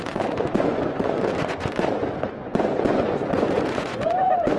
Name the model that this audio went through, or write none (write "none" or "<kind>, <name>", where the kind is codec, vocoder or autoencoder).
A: vocoder, Vocos